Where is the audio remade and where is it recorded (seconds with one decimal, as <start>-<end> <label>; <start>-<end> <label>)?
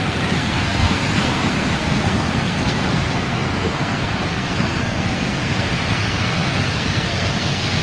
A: 0.0-7.8 remade